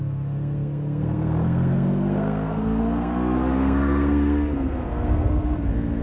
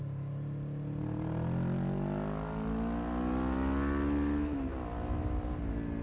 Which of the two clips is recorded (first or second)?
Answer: second